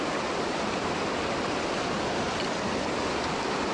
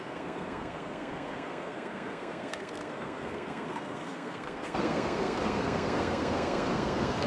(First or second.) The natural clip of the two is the first